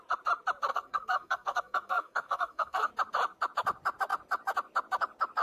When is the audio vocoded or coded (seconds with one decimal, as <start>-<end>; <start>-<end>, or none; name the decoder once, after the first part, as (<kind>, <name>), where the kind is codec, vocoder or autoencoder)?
0.7-2.9 (codec, SNAC)